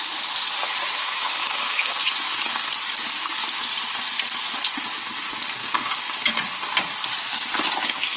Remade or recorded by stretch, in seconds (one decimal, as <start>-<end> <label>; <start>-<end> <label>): 0.0-1.0 recorded; 1.0-1.9 remade; 1.9-5.6 recorded; 5.6-6.3 remade; 6.3-8.2 recorded